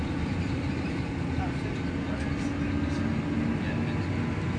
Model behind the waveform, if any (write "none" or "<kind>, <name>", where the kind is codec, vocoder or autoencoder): none